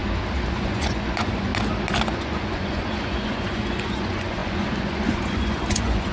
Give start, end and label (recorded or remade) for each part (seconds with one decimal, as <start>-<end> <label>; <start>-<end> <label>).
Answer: 0.0-0.5 recorded; 0.5-1.5 remade; 1.5-2.0 recorded; 2.0-6.1 remade